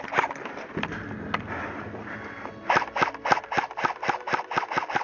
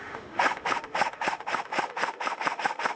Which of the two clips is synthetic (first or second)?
second